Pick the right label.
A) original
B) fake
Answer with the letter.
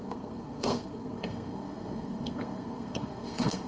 B